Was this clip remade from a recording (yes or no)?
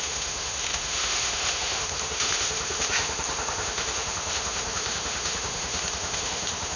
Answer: yes